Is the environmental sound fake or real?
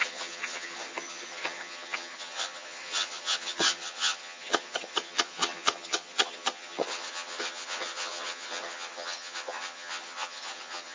fake